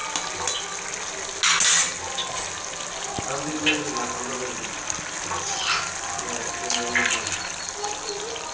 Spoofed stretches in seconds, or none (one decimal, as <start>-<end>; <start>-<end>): none